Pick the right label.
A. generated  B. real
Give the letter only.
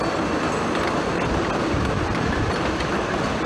B